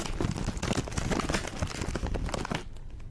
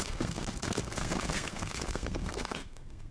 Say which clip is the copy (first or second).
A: second